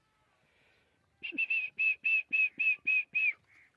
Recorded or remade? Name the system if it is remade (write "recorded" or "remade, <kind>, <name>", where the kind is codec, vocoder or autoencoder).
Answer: recorded